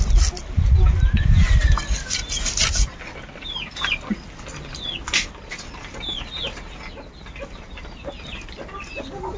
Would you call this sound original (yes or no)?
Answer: yes